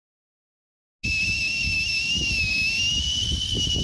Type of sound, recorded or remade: recorded